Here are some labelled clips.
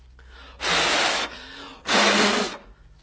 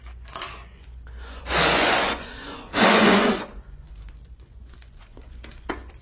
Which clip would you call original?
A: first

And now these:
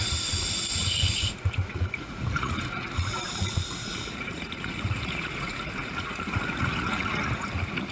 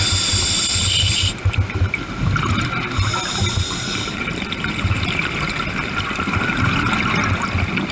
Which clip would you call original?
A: second